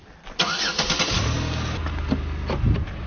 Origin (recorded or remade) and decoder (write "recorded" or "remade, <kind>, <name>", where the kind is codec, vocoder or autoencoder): recorded